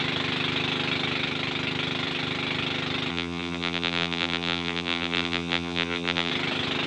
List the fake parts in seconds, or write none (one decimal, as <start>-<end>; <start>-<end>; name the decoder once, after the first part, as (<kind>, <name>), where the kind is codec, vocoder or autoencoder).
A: 3.1-6.3 (vocoder, BigVGAN v2)